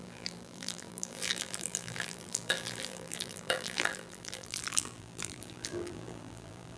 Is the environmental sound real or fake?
fake